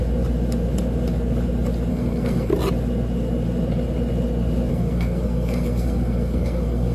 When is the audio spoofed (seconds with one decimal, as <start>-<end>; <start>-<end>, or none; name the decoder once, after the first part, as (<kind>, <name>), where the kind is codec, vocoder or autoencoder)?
1.9-2.5 (codec, SNAC); 4.7-6.9